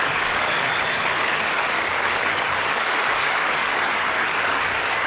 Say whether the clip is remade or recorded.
remade